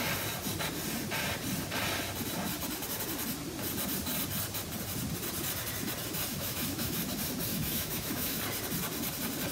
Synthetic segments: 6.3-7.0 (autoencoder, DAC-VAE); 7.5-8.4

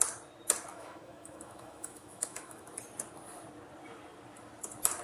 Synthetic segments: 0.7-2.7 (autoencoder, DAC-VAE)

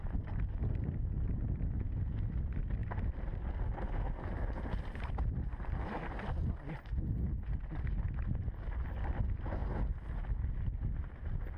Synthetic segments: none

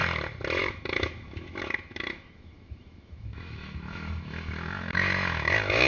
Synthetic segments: 0.6-5.9 (autoencoder, DAC-VAE)

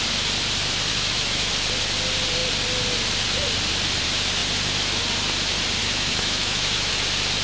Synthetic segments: 0.9-1.5 (autoencoder, DAC-VAE); 5.8-6.9